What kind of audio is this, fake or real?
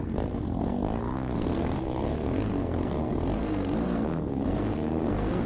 fake